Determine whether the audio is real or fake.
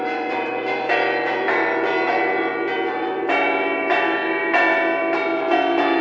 fake